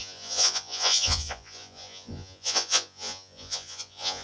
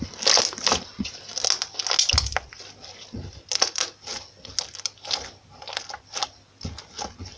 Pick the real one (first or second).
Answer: second